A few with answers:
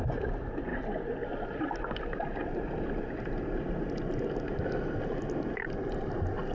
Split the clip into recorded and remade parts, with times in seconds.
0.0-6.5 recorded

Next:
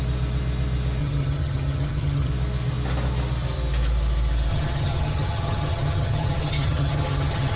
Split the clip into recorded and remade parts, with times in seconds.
0.0-1.0 recorded; 1.0-2.3 remade; 2.3-4.5 recorded; 4.5-7.6 remade

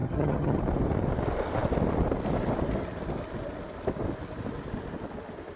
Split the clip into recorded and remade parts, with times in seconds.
0.0-0.6 remade; 0.6-5.6 recorded

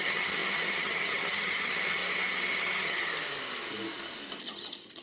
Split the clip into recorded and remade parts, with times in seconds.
0.0-2.0 remade; 2.0-2.5 recorded; 2.5-3.0 remade; 3.0-4.4 recorded; 4.4-5.0 remade

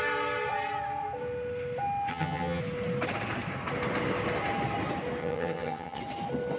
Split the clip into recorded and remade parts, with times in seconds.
0.0-2.1 recorded; 2.1-2.6 remade; 2.6-5.2 recorded; 5.2-6.0 remade; 6.0-6.6 recorded

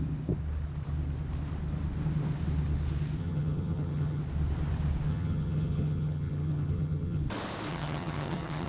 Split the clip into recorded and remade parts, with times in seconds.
0.0-3.2 recorded; 3.2-4.2 remade; 4.2-5.1 recorded; 5.1-7.2 remade; 7.2-7.7 recorded; 7.7-8.7 remade

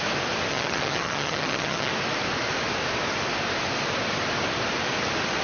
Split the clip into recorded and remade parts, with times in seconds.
0.0-0.5 recorded; 0.5-1.9 remade; 1.9-5.4 recorded